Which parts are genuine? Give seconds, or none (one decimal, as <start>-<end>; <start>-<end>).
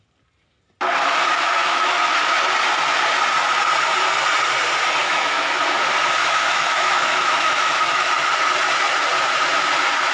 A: 0.0-1.3; 2.1-5.0; 5.6-6.2; 8.1-10.1